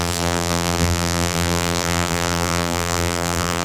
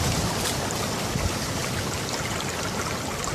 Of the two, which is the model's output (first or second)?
first